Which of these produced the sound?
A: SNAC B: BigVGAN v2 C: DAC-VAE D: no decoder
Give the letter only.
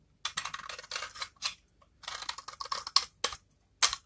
D